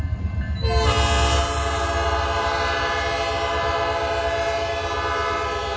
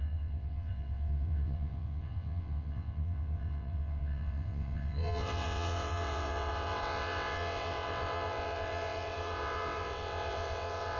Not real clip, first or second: second